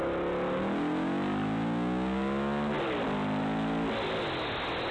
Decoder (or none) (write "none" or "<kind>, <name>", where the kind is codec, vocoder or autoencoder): none